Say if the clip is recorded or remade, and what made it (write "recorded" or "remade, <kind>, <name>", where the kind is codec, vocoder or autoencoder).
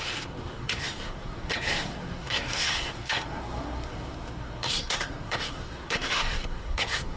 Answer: remade, codec, SNAC